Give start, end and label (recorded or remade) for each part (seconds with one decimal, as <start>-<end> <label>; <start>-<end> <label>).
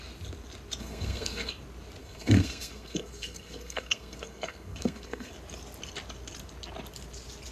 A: 0.0-0.8 recorded; 0.8-1.5 remade; 1.5-2.0 recorded; 2.0-5.3 remade; 5.3-7.5 recorded